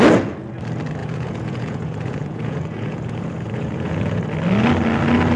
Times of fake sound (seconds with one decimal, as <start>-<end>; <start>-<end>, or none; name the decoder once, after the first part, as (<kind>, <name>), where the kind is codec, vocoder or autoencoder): 1.0-4.2 (vocoder, Vocos)